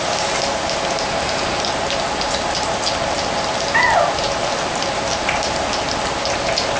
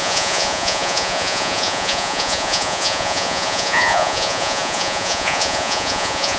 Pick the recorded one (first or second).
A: first